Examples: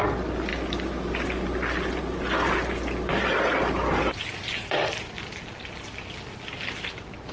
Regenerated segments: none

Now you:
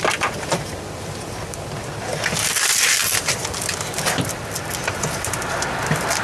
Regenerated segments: 0.0-6.2 (vocoder, BigVGAN v2)

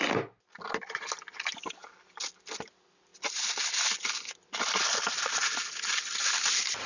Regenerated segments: none